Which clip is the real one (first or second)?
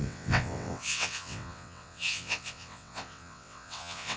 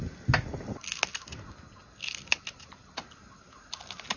second